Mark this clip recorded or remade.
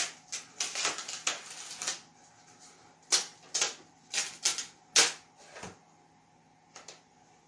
recorded